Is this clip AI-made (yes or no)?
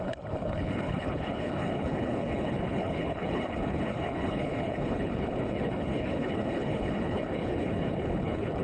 yes